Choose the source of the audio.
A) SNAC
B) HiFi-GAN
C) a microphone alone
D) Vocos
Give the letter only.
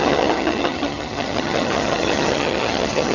B